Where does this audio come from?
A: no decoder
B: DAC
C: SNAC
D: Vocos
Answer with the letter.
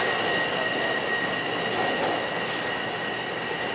A